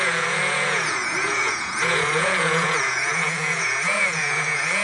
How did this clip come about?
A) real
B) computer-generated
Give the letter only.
B